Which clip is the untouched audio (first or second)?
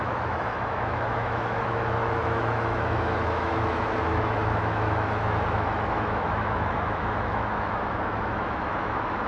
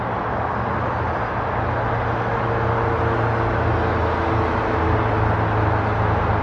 second